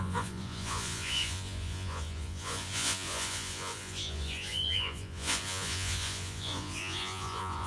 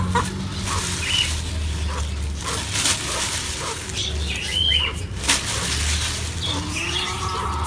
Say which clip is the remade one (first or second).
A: first